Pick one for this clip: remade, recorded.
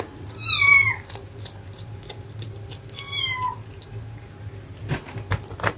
recorded